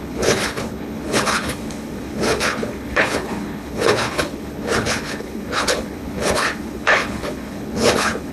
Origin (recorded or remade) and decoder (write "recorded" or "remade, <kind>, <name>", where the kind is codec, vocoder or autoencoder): remade, codec, HILCodec